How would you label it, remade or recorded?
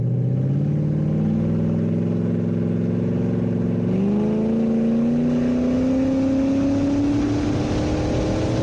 recorded